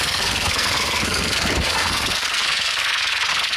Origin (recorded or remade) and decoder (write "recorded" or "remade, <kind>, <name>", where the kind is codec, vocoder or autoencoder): remade, codec, SNAC